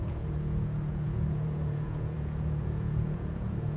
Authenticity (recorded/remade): remade